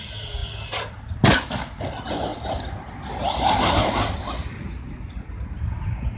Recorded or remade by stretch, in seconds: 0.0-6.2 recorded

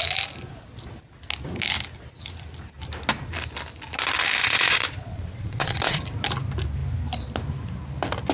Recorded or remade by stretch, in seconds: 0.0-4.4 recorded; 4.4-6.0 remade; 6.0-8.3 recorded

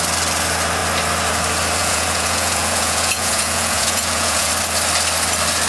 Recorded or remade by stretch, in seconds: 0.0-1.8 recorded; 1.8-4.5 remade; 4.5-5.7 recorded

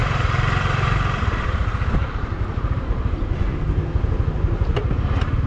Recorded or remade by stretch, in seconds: 0.0-3.3 remade; 3.3-4.7 recorded; 4.7-5.5 remade